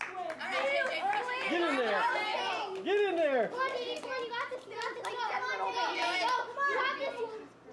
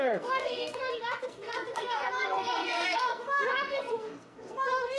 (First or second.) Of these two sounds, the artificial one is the second